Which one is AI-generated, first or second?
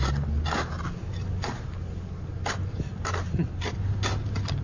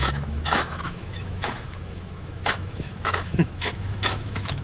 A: second